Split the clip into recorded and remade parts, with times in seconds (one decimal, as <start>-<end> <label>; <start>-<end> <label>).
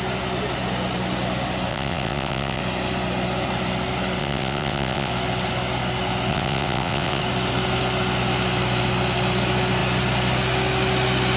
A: 0.0-1.7 recorded; 1.7-2.6 remade; 2.6-4.2 recorded; 4.2-5.1 remade; 5.1-6.3 recorded; 6.3-7.2 remade; 7.2-11.4 recorded